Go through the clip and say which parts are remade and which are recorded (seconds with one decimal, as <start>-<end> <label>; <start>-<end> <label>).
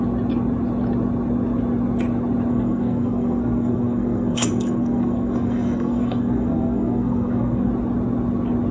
0.0-2.5 recorded; 2.5-7.7 remade; 7.7-8.7 recorded